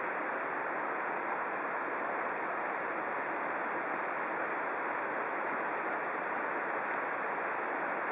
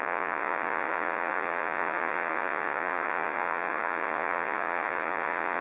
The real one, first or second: first